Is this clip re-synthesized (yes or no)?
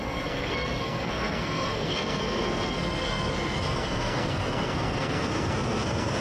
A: yes